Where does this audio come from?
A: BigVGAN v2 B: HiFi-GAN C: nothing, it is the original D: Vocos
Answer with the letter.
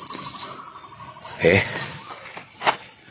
C